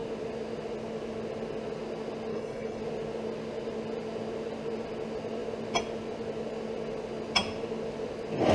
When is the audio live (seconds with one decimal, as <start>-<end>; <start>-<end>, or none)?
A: 0.0-2.3; 2.8-8.5